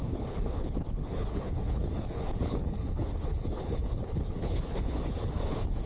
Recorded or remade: remade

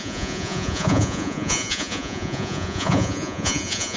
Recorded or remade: remade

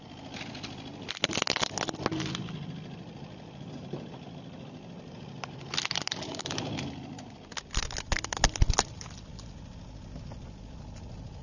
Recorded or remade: recorded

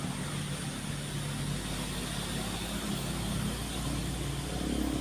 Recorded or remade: recorded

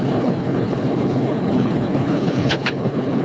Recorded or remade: remade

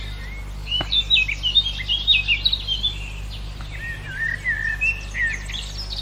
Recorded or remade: recorded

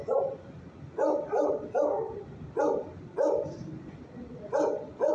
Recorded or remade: remade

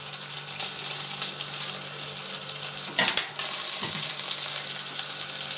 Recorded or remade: recorded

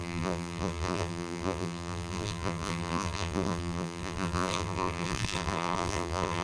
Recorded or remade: remade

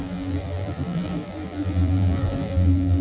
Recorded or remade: remade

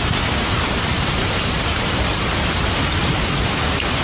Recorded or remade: remade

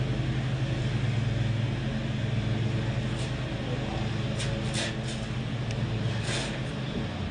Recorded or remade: recorded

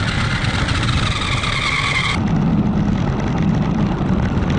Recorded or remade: recorded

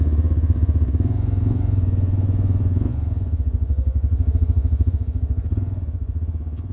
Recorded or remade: remade